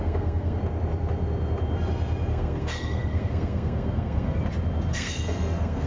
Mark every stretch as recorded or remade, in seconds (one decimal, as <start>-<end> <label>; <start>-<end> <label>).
0.0-0.6 remade; 0.6-2.3 recorded; 2.3-4.4 remade; 4.4-4.9 recorded; 4.9-5.9 remade